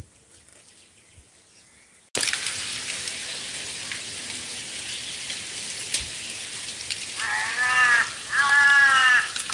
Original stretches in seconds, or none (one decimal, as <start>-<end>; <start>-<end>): 0.0-9.5

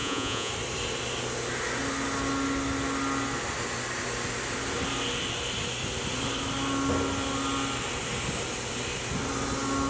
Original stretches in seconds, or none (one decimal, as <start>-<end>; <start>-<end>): 0.5-9.9

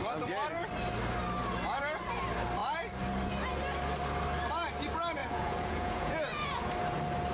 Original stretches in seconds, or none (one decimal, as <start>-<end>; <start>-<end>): 0.0-5.2; 6.7-7.3

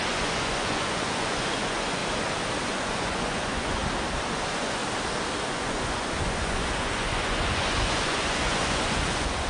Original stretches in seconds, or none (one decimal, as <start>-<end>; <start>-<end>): 2.0-2.6; 3.8-4.3; 4.8-5.4

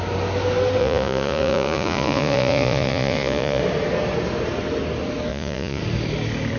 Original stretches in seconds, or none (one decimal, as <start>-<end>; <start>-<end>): 0.0-0.8; 3.6-5.3; 5.8-6.6

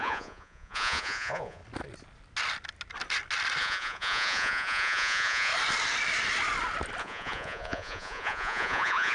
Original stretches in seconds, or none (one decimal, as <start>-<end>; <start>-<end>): 1.6-3.6; 5.5-7.0

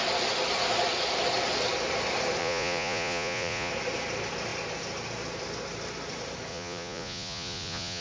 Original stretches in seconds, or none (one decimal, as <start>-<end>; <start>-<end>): 0.0-2.4; 3.7-6.5

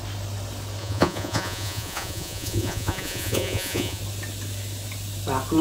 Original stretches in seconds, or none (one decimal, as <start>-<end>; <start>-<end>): 0.0-0.8; 4.0-5.6